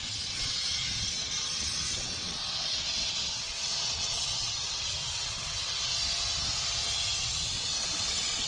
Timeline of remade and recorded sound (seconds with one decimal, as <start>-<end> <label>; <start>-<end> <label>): 0.0-5.9 remade; 5.9-7.2 recorded; 7.2-8.5 remade